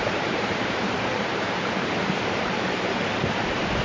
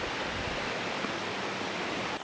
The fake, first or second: first